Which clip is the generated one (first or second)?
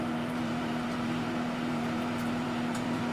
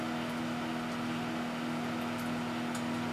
first